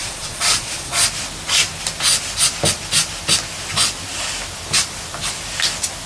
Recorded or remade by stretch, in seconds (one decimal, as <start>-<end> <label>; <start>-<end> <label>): 0.0-1.0 remade; 1.0-6.1 recorded